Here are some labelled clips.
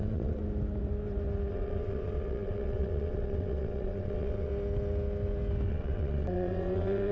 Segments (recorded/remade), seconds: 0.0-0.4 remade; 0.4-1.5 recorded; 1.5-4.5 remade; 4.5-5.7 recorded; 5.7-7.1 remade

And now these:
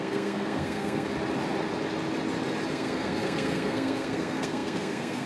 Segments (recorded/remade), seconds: 0.0-1.1 remade; 1.1-2.7 recorded; 2.7-5.3 remade

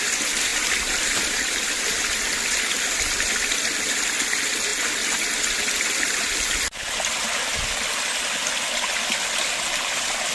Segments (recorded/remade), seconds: 0.0-0.5 recorded; 0.5-2.4 remade; 2.4-10.3 recorded

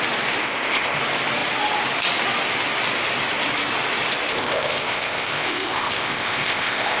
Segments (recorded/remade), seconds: 0.0-0.4 recorded; 0.4-1.0 remade; 1.0-4.3 recorded; 4.3-7.0 remade

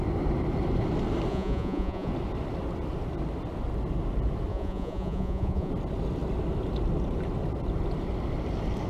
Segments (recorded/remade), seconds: 0.0-1.3 recorded; 1.3-2.1 remade; 2.1-4.5 recorded; 4.5-5.7 remade; 5.7-8.9 recorded

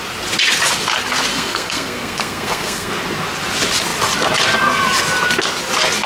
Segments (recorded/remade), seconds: 0.0-1.3 recorded; 1.3-2.9 remade; 2.9-6.1 recorded

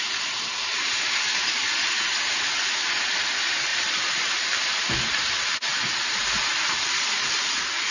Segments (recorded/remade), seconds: 0.0-7.9 recorded

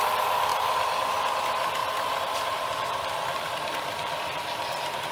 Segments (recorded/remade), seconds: 0.0-0.5 recorded; 0.5-1.0 remade; 1.0-1.8 recorded; 1.8-5.1 remade